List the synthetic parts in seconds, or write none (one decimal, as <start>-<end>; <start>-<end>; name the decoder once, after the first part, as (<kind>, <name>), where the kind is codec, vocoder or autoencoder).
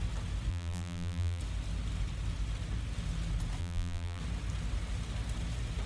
0.5-1.4 (vocoder, BigVGAN v2); 3.6-4.2